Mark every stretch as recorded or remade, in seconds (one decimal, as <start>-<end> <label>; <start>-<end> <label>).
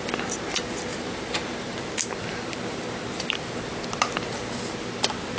0.0-0.9 recorded; 0.9-3.7 remade; 3.7-5.4 recorded